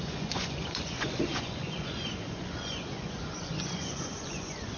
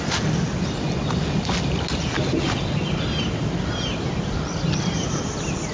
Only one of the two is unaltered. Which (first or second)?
second